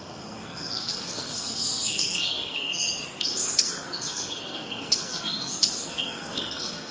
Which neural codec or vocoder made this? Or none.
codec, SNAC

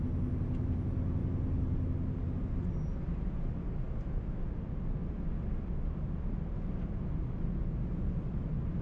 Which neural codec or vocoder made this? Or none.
none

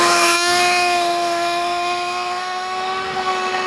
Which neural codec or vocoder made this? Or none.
autoencoder, DAC-VAE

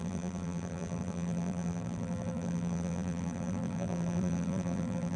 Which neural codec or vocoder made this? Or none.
vocoder, BigVGAN v2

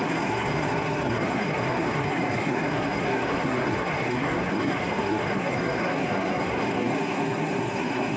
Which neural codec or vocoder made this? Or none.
codec, SNAC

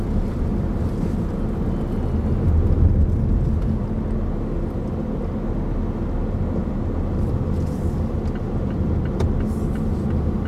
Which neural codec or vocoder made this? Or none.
none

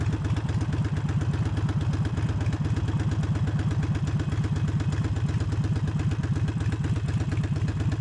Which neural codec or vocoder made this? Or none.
none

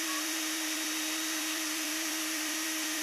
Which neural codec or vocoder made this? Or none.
vocoder, BigVGAN v2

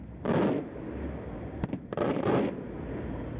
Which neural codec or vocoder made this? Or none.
none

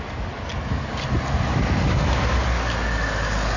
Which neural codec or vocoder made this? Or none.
none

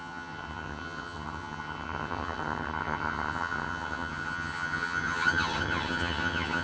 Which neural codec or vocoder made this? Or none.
vocoder, HiFi-GAN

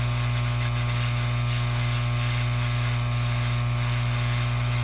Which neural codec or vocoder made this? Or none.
none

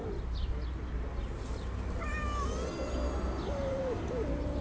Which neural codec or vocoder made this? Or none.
none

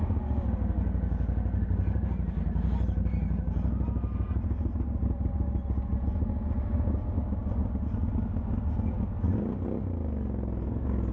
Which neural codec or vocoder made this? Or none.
none